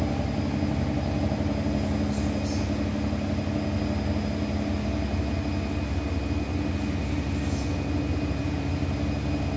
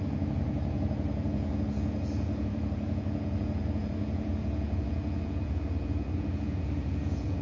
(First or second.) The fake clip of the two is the second